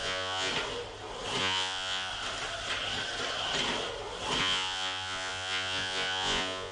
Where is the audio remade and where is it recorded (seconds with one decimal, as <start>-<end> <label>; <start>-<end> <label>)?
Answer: 0.0-0.5 remade; 0.5-1.4 recorded; 1.4-2.1 remade; 2.1-4.4 recorded; 4.4-6.7 remade